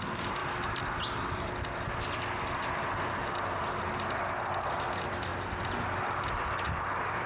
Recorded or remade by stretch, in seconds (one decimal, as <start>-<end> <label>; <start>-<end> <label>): 0.0-7.3 recorded